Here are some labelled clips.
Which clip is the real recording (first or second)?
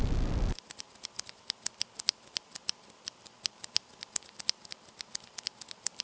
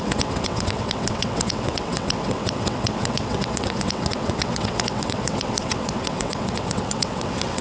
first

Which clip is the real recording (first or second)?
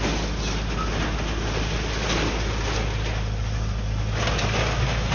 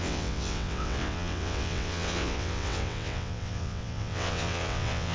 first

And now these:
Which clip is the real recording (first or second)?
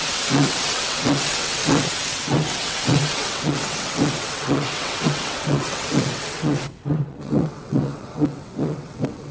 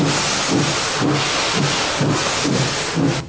second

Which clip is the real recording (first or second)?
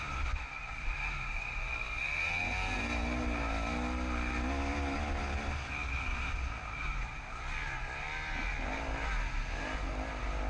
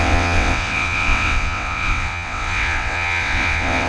first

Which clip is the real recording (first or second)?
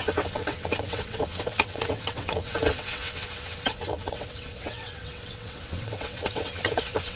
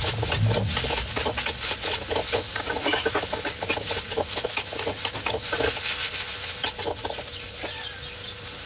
second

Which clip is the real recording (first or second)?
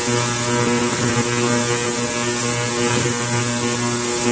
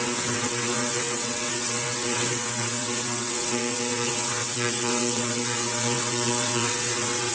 first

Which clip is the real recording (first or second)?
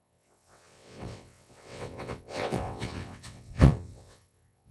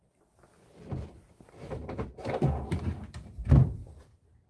second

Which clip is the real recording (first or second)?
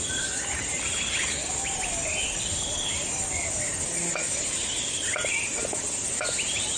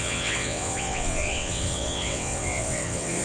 first